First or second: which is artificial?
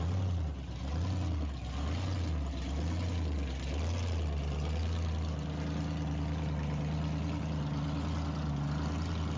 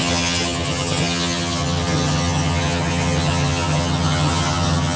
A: second